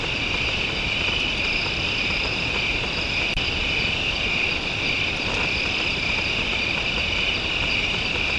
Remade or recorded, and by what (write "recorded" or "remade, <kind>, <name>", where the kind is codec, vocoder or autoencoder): remade, vocoder, BigVGAN v2